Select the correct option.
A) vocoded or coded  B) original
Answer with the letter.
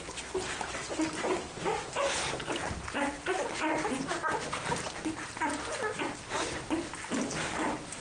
B